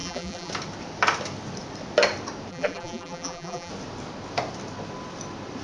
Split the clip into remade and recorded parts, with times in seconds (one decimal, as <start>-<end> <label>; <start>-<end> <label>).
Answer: 0.0-0.5 remade; 0.5-2.5 recorded; 2.5-3.7 remade; 3.7-5.6 recorded